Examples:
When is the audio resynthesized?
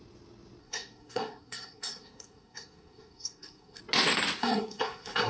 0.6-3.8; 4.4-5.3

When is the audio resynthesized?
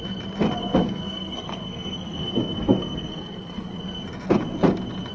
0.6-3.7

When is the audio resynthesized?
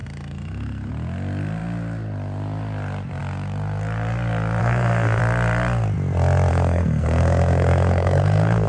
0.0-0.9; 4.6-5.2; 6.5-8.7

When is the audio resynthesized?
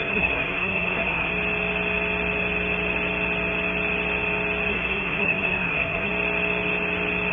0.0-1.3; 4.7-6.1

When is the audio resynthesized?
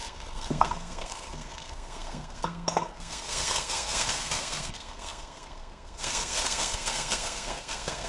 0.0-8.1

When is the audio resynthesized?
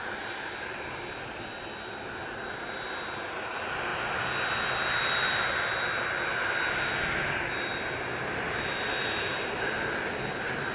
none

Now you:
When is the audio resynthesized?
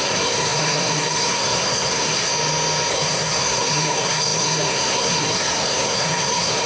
0.0-2.3; 2.9-6.7